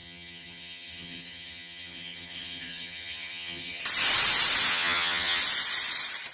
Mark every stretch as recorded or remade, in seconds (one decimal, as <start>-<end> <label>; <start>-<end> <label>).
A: 0.0-3.8 remade; 3.8-4.7 recorded; 4.7-5.4 remade; 5.4-6.3 recorded